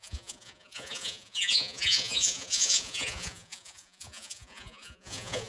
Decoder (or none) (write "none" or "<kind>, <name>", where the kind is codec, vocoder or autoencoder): vocoder, Vocos